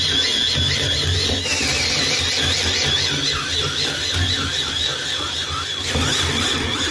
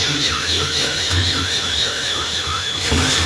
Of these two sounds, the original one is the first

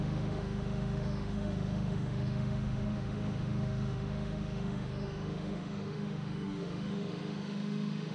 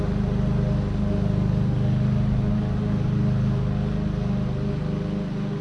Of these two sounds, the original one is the second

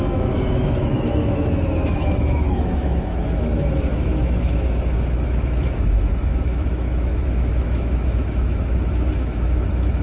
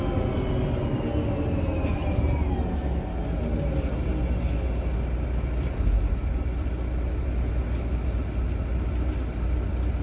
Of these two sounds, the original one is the second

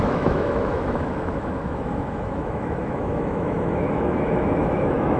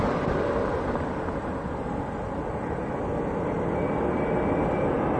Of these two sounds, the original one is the second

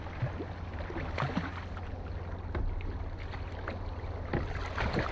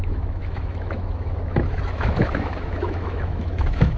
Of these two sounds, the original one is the first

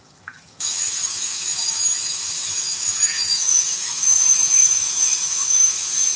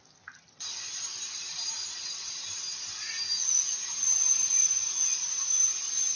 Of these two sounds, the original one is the second